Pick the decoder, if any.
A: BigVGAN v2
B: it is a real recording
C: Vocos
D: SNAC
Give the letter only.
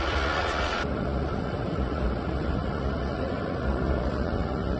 C